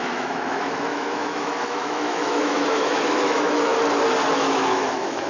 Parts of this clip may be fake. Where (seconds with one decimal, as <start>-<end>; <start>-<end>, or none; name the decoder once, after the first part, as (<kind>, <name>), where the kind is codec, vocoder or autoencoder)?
0.0-3.7 (autoencoder, DAC-VAE); 4.3-5.3